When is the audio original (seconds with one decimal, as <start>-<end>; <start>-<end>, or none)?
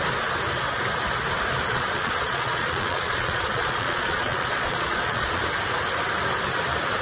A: 0.0-1.7; 5.4-7.0